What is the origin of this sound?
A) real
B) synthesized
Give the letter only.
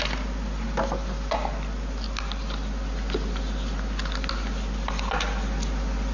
A